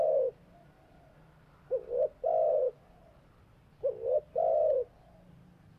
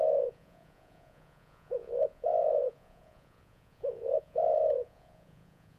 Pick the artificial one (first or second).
second